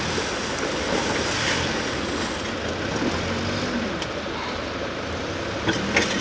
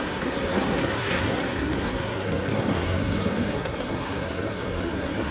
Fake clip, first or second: second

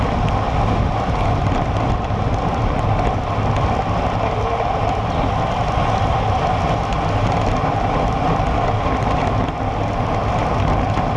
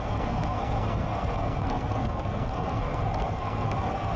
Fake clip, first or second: second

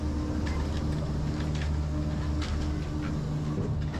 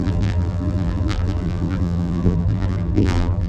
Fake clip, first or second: second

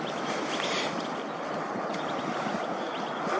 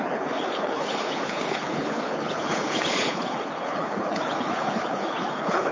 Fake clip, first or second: second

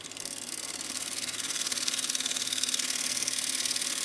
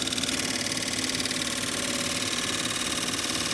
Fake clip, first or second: first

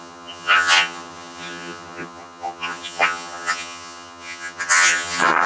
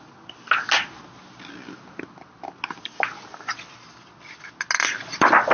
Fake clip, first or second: first